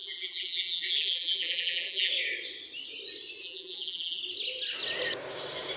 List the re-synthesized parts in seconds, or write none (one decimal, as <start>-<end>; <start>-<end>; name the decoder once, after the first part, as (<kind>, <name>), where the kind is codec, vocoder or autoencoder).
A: 0.0-2.1 (vocoder, BigVGAN v2); 3.4-4.2